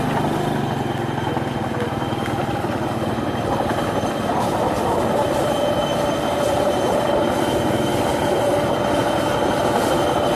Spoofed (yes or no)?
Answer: no